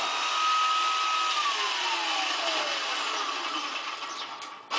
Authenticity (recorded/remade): recorded